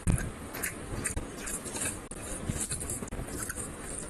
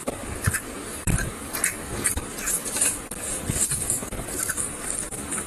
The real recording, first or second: first